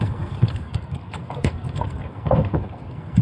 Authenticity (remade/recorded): remade